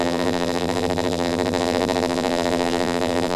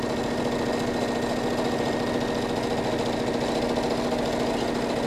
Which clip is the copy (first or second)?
first